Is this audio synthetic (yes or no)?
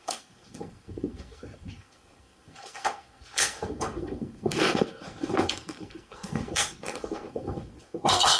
yes